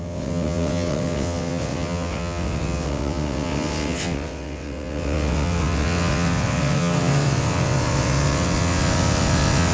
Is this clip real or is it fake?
fake